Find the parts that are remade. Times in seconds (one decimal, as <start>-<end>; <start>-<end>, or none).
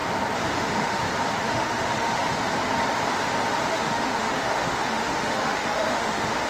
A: 0.6-1.0; 1.5-2.2; 3.7-6.5